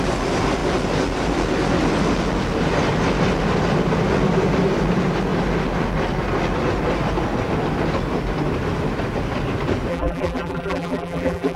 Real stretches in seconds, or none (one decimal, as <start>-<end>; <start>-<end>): 0.0-9.9

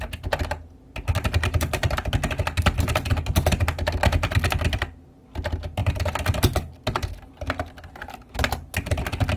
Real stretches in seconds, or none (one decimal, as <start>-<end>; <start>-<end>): 0.0-9.4

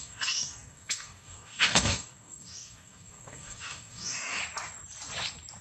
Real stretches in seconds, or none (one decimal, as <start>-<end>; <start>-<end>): 4.4-5.6

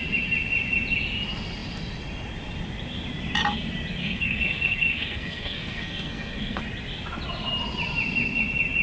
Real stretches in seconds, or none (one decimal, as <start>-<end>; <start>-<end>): 0.0-4.0; 6.6-8.8